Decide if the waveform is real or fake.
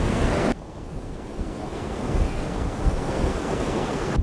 fake